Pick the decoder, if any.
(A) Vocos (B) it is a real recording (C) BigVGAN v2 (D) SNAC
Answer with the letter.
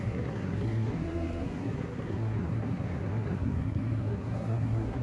D